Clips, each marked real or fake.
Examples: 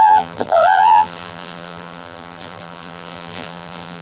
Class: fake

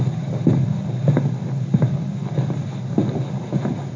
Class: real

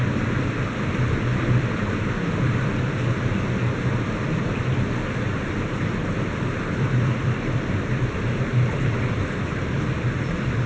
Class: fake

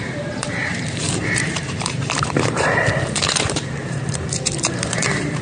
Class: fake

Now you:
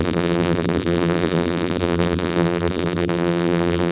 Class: fake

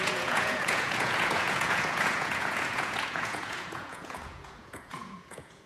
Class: fake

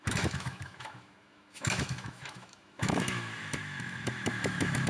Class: fake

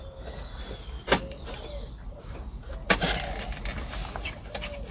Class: real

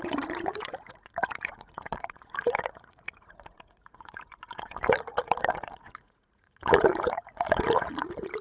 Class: fake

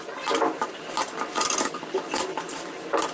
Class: real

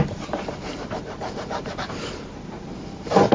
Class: fake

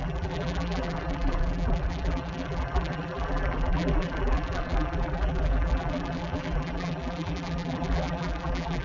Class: fake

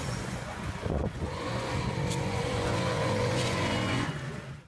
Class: fake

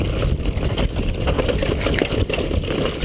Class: real